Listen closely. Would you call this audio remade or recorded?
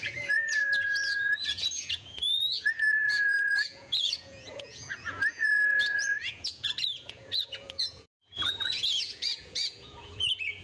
remade